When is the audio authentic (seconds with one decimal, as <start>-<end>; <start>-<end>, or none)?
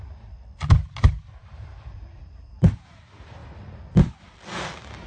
0.0-1.4; 3.0-5.1